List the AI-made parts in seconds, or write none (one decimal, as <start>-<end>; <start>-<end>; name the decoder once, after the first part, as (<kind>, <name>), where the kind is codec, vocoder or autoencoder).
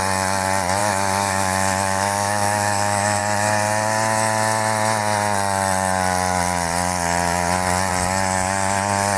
0.8-3.2 (autoencoder, DAC-VAE)